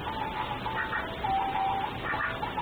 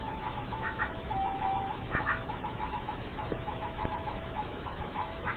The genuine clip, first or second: first